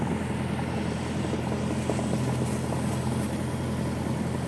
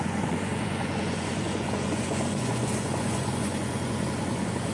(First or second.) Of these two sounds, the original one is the first